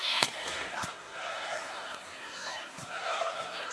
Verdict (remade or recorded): remade